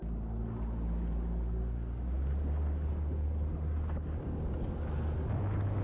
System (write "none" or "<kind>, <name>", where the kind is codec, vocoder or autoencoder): none